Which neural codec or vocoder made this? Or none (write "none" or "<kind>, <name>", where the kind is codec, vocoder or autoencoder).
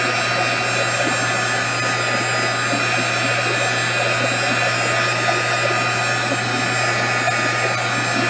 none